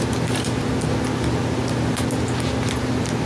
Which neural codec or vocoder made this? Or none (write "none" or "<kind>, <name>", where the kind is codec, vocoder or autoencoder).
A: none